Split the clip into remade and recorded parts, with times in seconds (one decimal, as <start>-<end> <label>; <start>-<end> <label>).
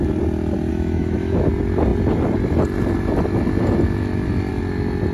0.0-0.7 recorded; 0.7-1.5 remade; 1.5-5.1 recorded